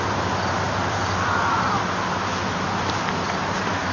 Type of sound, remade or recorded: recorded